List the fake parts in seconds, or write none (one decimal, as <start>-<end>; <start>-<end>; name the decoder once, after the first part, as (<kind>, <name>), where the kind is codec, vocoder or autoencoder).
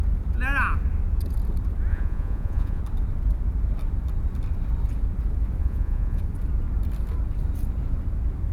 1.9-2.8 (vocoder, Vocos); 5.6-6.2